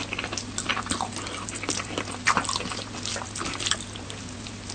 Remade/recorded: recorded